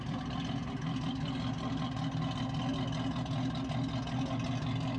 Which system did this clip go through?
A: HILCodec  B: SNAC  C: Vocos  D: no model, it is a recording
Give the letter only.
D